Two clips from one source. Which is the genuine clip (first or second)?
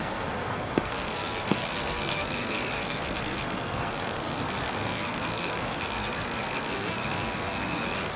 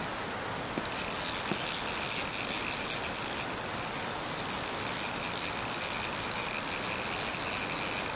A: second